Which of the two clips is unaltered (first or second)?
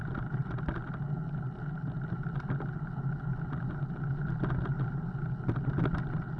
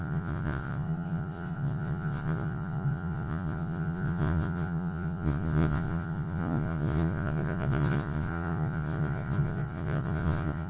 first